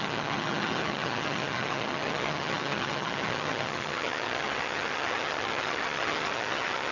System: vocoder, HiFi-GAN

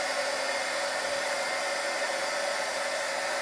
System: none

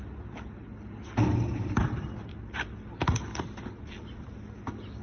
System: none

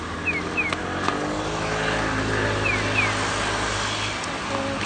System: none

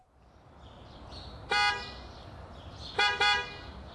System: none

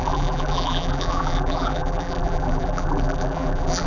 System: vocoder, BigVGAN v2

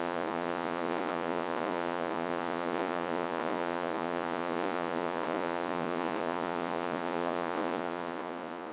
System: vocoder, Vocos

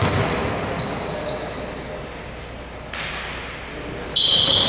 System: none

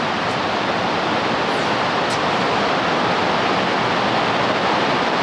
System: none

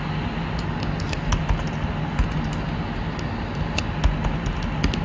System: none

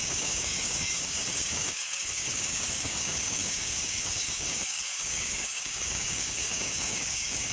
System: codec, DAC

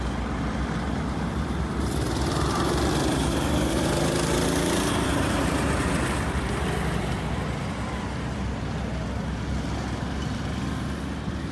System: none